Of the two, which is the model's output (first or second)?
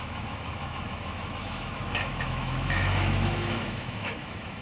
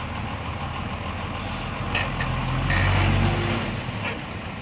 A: first